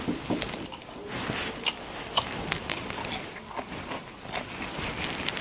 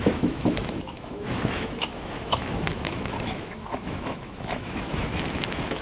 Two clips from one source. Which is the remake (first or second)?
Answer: second